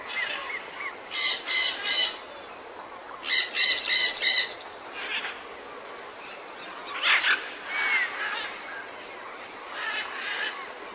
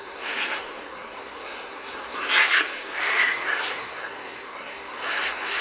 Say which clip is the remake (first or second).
second